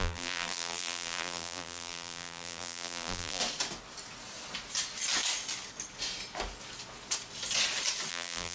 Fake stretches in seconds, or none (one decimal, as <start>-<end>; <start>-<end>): 0.0-3.4; 8.1-8.5